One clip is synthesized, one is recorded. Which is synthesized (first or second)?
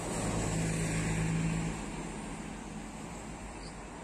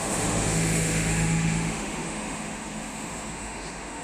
second